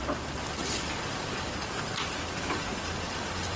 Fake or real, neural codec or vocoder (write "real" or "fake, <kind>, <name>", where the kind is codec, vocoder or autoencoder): real